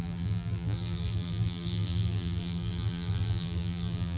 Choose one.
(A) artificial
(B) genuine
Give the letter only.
A